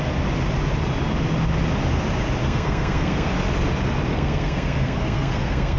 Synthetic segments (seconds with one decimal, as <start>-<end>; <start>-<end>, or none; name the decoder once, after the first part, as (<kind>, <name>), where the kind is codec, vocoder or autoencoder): 2.4-3.3 (codec, SNAC); 4.1-5.8